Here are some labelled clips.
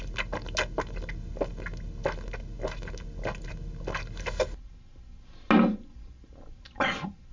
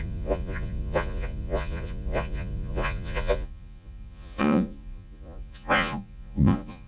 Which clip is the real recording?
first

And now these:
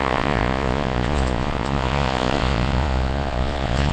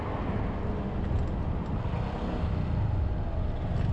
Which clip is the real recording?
second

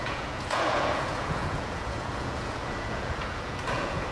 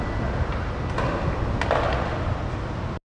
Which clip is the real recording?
second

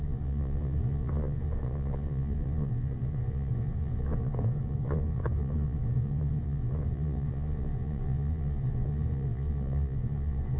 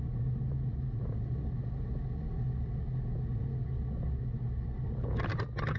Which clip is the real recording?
second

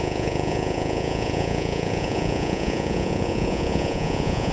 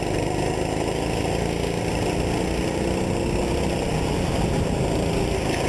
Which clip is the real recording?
second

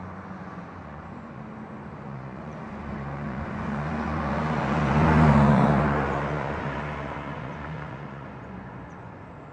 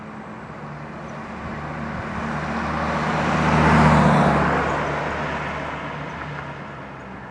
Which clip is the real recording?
second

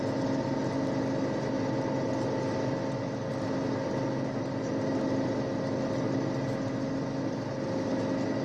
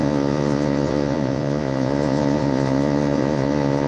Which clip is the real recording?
first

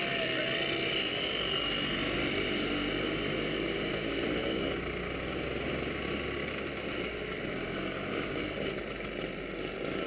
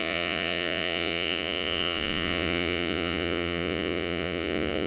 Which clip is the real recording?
first